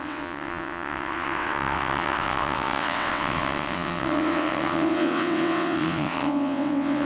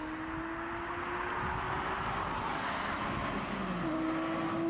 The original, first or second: second